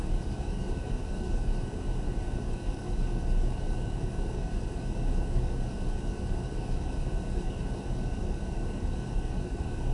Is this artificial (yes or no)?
yes